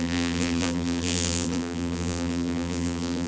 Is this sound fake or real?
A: fake